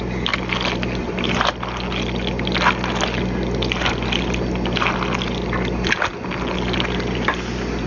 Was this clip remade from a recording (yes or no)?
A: no